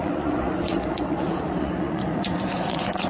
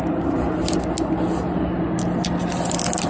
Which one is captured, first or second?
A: second